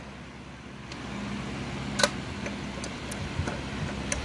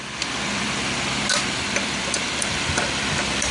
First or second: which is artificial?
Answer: second